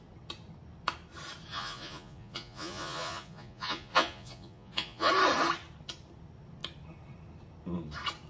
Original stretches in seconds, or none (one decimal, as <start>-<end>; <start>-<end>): 0.0-1.5; 5.1-8.3